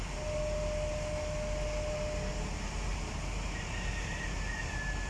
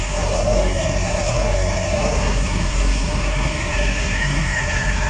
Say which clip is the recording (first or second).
first